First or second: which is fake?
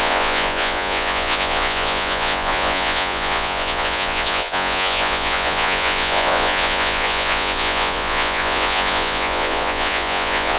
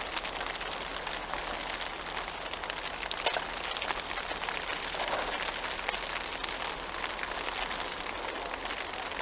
first